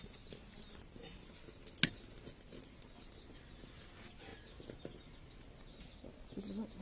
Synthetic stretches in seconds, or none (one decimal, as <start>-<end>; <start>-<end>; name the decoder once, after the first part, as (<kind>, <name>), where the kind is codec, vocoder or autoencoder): none